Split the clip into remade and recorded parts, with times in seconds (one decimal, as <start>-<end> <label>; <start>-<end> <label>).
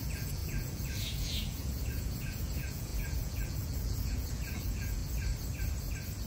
0.0-5.0 remade; 5.0-6.3 recorded